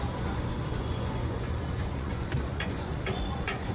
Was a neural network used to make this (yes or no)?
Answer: yes